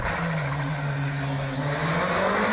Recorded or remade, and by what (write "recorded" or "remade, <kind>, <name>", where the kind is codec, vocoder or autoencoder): recorded